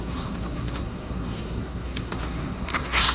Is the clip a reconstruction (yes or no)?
yes